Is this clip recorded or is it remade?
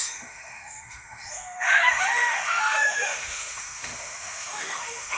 remade